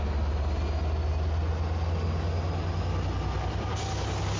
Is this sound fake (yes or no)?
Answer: no